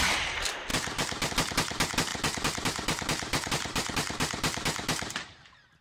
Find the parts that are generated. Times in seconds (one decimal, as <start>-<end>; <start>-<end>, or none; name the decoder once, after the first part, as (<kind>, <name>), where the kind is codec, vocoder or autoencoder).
0.7-1.3 (vocoder, BigVGAN v2); 2.1-5.8